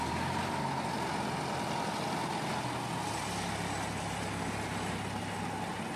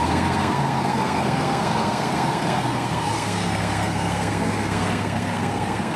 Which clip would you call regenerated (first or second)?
second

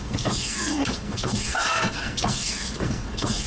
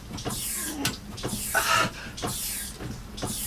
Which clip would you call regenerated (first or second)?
first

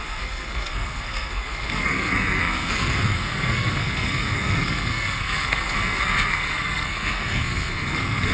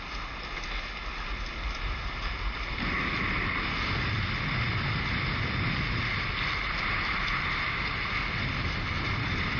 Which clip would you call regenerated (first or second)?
first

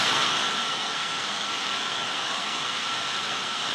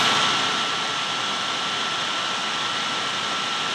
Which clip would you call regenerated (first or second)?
first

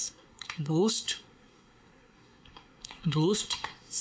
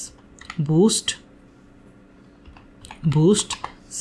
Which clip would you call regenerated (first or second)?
first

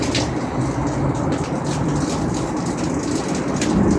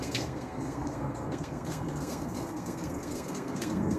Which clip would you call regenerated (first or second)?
second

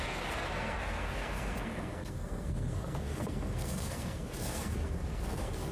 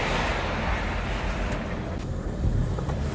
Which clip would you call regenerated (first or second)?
first